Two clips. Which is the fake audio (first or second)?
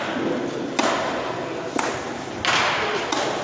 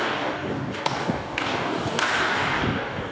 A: second